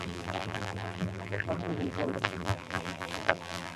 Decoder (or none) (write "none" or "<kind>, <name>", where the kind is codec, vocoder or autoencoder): vocoder, BigVGAN v2